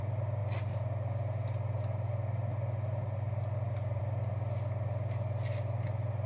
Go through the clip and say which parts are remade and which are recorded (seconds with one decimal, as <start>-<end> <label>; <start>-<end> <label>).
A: 0.0-6.3 recorded